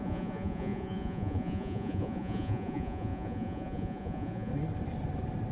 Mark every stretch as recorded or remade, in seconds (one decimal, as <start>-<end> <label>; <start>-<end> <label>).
0.0-4.5 remade; 4.5-5.5 recorded